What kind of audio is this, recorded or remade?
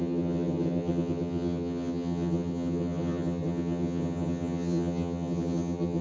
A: remade